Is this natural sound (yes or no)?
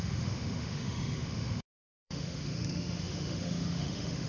no